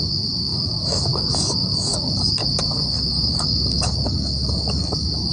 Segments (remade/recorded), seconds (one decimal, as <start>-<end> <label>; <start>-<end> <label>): 0.0-5.3 remade